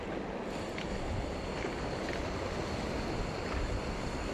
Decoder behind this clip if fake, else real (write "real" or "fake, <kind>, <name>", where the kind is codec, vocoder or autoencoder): real